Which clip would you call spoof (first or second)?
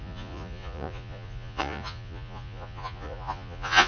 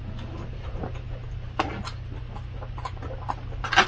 first